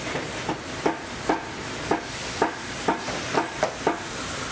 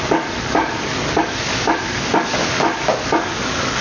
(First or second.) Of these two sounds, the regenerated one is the second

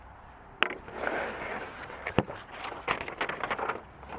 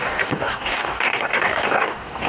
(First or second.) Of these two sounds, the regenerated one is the second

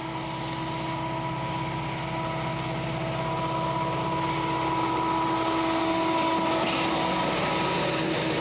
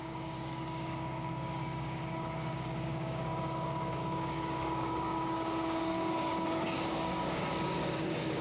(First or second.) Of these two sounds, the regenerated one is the second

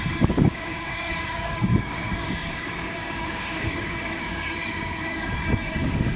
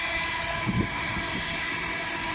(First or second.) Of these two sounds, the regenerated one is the first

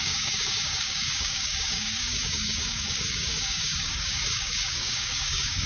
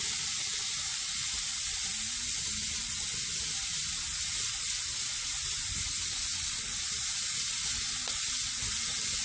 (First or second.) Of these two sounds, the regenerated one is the first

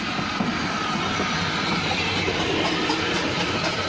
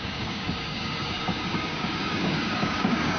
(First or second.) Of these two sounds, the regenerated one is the second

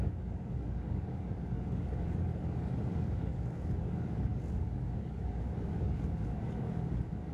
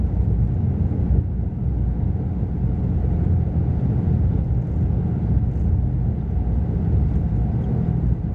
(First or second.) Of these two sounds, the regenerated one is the first